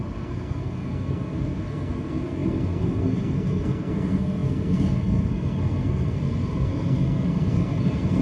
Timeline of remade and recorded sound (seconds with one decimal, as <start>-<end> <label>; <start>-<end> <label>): 0.0-8.2 remade